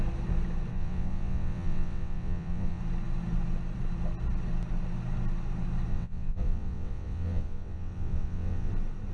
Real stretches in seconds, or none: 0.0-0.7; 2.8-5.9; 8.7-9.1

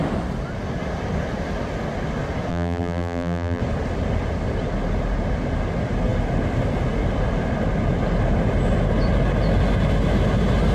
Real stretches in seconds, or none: 0.0-2.5; 3.6-10.7

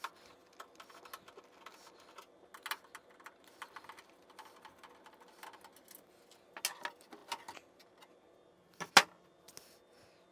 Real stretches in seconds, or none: 0.0-10.3

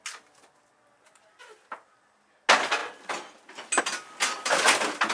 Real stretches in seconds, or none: 0.0-5.1